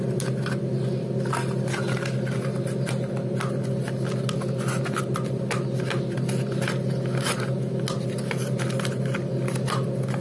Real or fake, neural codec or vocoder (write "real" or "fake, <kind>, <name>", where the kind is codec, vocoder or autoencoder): real